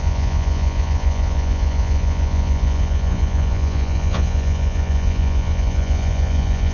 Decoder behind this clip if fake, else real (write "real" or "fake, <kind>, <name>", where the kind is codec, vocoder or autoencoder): fake, vocoder, Vocos